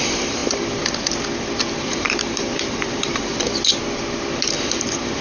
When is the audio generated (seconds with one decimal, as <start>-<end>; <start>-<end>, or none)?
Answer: 0.0-0.4; 1.8-3.3; 4.5-5.2